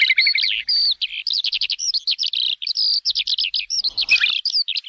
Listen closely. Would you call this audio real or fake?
real